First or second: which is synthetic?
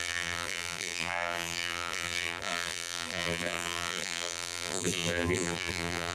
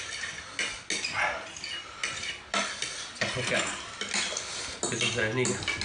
first